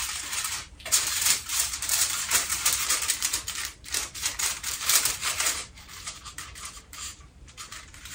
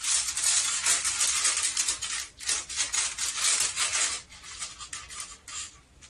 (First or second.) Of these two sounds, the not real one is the first